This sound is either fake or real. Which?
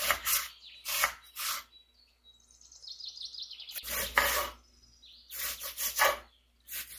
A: real